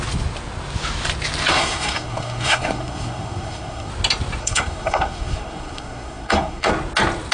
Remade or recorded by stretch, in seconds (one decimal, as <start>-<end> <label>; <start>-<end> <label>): 0.0-1.5 recorded; 1.5-3.9 remade; 3.9-4.4 recorded; 4.4-6.7 remade; 6.7-7.3 recorded